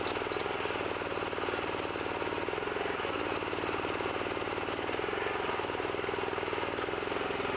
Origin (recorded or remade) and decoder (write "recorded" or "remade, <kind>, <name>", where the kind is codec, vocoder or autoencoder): recorded